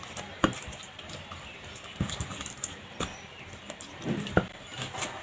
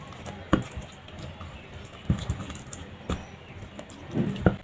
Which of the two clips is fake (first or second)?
first